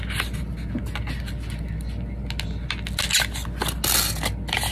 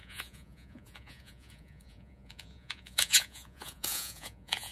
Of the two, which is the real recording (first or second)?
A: first